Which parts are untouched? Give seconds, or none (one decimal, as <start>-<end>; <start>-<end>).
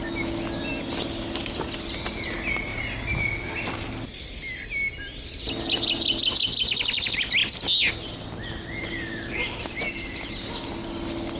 0.0-11.4